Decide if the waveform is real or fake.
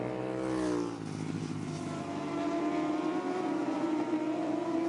real